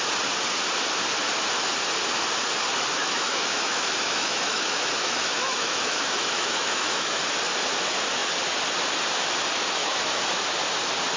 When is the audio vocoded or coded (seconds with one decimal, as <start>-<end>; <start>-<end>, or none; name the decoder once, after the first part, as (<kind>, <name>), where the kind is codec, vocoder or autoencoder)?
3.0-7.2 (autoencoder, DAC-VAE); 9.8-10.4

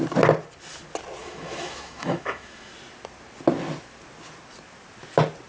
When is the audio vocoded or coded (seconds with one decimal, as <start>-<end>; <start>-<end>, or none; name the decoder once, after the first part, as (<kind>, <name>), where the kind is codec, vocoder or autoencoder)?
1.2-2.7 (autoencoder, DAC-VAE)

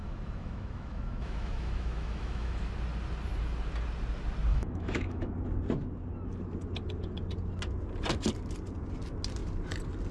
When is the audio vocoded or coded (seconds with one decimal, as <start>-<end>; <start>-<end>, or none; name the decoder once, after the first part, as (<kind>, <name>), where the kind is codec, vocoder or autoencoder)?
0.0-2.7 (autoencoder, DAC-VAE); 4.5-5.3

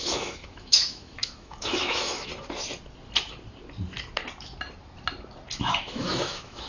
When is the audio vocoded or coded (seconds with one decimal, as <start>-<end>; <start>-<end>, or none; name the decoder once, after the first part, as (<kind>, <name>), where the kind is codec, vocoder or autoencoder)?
0.0-2.3 (autoencoder, DAC-VAE); 5.6-6.7

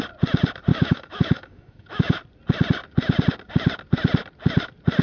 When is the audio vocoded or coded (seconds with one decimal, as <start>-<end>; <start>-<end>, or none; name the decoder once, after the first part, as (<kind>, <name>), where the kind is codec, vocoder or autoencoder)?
0.7-2.2 (autoencoder, DAC-VAE)